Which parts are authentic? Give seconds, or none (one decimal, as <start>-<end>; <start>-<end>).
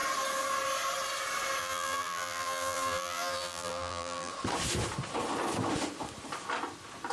0.0-1.6; 4.3-7.1